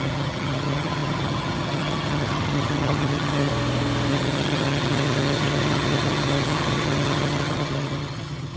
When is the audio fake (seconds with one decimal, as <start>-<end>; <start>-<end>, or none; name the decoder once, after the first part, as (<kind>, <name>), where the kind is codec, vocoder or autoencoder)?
0.0-3.5 (vocoder, HiFi-GAN); 4.1-8.6